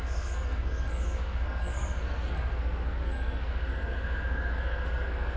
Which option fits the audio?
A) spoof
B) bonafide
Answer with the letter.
A